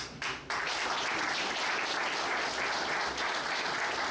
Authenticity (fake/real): real